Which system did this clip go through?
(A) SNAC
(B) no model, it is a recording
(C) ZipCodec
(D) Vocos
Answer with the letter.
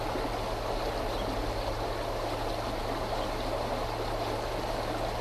B